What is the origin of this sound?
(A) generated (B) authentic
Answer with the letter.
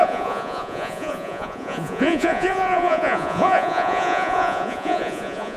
A